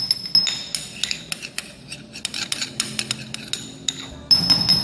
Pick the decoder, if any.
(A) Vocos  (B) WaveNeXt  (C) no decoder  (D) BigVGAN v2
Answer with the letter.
C